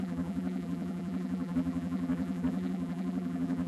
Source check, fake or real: fake